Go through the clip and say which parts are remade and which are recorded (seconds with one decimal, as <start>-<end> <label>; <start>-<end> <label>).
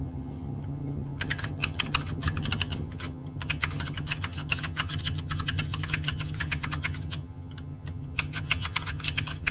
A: 0.0-9.5 remade